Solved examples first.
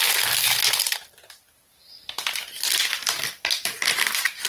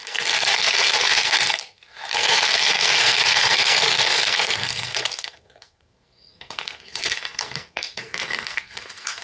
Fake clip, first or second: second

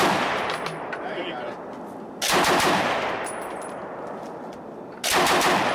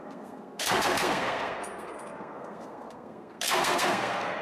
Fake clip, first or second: second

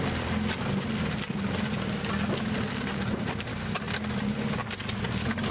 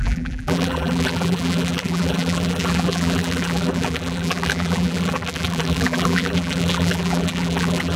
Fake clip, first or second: second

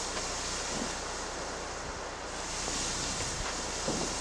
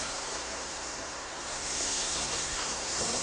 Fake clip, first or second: second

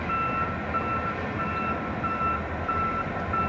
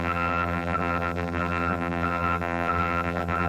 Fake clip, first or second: second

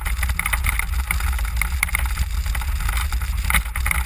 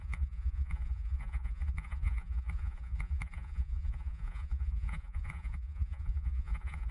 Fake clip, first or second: second